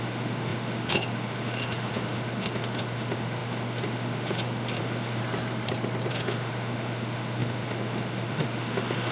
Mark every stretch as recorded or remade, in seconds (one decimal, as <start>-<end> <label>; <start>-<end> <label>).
0.0-5.2 remade; 5.2-6.1 recorded; 6.1-9.1 remade